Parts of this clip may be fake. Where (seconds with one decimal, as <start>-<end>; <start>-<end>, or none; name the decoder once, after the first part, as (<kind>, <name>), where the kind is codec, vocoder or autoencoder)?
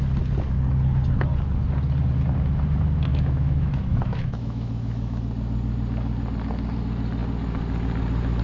3.1-5.2 (autoencoder, DAC-VAE)